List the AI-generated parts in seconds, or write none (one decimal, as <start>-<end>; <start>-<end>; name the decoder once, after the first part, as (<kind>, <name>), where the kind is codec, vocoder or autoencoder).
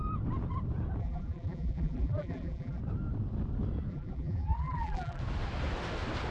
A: 1.0-2.8 (vocoder, BigVGAN v2); 3.9-5.2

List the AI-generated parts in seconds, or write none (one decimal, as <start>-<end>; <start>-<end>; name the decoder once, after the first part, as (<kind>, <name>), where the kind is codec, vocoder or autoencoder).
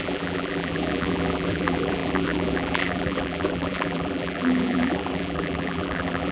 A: 0.0-6.3 (vocoder, BigVGAN v2)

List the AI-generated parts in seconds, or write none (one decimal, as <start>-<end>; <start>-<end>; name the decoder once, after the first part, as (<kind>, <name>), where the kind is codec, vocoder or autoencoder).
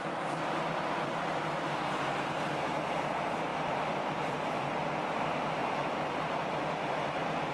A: 5.6-6.2 (vocoder, BigVGAN v2)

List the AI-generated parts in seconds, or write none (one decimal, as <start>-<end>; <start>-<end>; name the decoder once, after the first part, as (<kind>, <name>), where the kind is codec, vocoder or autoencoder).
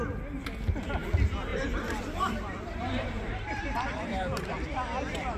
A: 1.5-4.4 (vocoder, BigVGAN v2)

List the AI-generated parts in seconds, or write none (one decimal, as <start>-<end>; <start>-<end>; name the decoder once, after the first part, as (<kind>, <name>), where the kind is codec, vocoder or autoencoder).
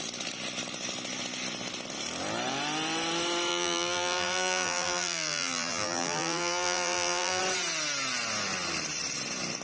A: 3.5-7.4 (vocoder, BigVGAN v2)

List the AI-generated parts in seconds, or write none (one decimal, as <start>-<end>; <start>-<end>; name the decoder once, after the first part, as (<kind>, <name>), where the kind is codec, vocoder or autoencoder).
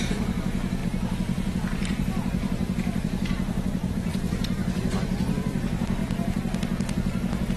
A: 0.0-6.0 (vocoder, BigVGAN v2)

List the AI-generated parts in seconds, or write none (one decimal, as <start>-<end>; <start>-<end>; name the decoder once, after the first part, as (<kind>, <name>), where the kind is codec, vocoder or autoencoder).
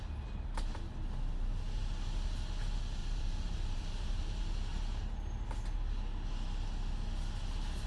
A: 3.0-4.4 (vocoder, BigVGAN v2)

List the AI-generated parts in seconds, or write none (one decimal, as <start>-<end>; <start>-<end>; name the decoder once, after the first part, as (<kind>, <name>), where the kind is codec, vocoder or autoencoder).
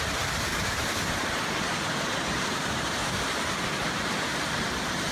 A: 0.5-3.6 (vocoder, BigVGAN v2)